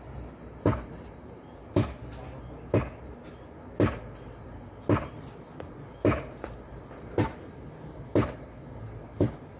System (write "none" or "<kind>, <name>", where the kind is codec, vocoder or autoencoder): none